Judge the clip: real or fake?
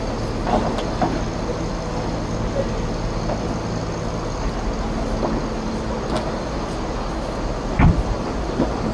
real